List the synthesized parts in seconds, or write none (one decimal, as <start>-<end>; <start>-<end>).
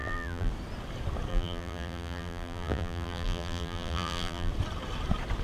0.0-0.5; 1.3-4.5